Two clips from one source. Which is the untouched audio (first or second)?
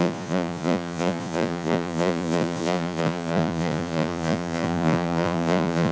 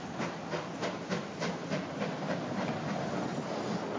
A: second